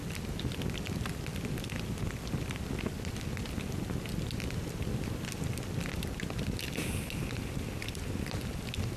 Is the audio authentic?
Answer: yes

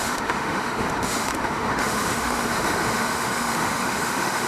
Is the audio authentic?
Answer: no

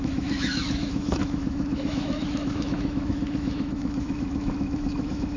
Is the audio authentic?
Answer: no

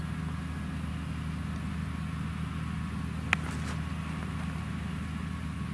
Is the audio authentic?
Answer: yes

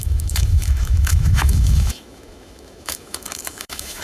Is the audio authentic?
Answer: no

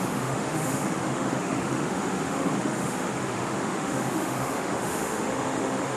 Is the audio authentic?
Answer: no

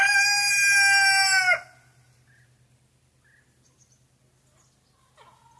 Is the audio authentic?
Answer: yes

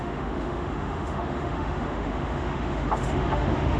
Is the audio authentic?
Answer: no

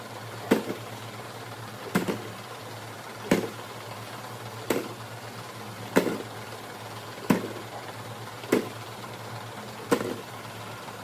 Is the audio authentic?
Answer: yes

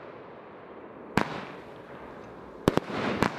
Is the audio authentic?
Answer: yes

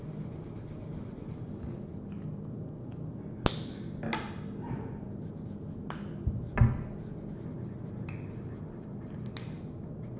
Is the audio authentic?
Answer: yes